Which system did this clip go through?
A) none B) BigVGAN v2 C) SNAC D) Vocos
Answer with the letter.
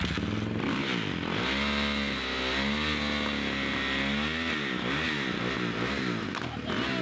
A